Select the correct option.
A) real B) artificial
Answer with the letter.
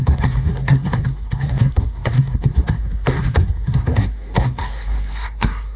B